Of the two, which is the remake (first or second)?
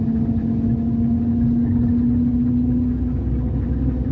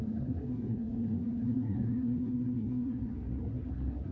second